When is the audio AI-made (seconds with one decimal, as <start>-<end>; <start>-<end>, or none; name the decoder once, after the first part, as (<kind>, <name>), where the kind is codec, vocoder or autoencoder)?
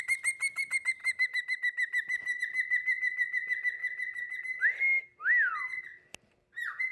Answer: none